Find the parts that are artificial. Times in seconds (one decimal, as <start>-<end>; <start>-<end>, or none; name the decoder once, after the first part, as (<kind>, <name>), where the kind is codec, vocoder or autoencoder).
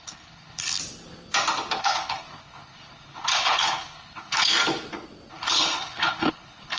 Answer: 0.0-0.8 (codec, HILCodec); 1.8-4.5; 5.3-6.8